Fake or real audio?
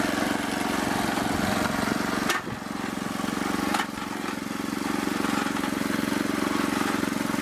real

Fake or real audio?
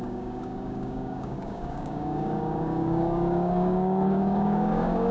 fake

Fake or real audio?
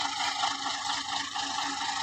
real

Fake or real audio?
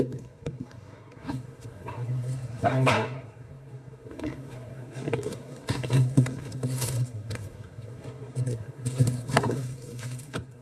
fake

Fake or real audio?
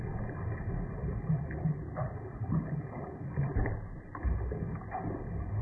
real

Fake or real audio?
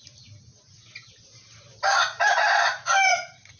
real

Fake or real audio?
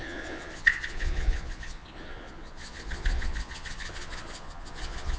fake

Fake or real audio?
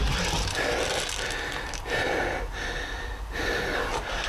real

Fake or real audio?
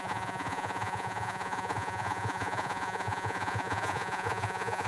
fake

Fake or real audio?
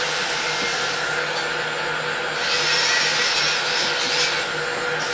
real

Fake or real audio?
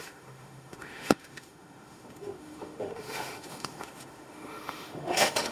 fake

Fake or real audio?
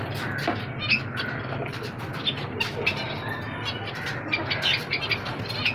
real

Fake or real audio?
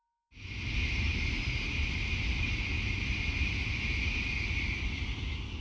real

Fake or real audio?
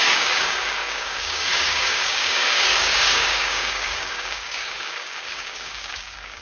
fake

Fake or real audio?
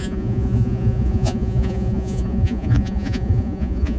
fake